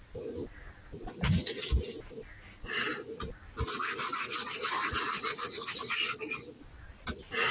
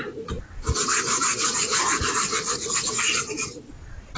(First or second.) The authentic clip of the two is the first